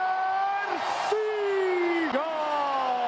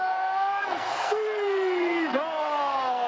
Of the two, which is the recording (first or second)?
first